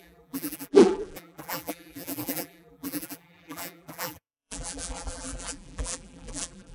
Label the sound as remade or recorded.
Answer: remade